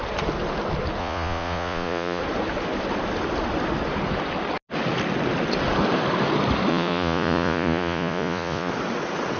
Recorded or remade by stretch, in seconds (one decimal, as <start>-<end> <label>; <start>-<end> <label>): 0.0-1.0 recorded; 1.0-2.2 remade; 2.2-6.7 recorded; 6.7-8.7 remade; 8.7-9.4 recorded